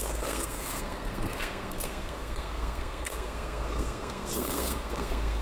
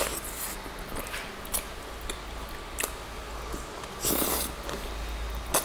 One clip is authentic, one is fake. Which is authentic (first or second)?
second